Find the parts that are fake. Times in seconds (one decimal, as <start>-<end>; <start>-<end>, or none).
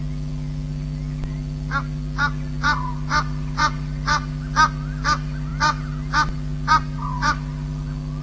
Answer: none